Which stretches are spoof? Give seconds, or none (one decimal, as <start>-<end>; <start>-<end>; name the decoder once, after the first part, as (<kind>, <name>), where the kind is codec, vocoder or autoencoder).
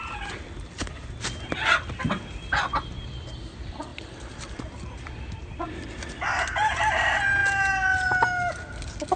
none